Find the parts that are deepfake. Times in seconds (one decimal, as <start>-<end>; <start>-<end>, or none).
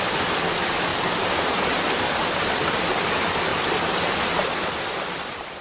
0.0-0.9; 1.5-3.5; 4.2-5.6